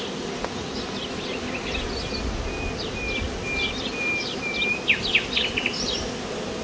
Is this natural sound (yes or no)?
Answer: yes